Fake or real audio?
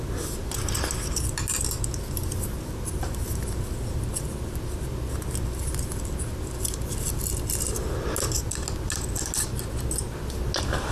real